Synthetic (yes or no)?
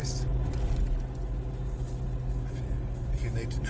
no